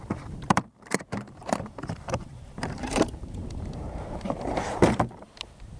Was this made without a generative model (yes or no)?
no